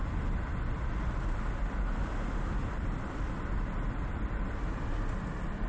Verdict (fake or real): real